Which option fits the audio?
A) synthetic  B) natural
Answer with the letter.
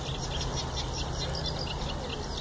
B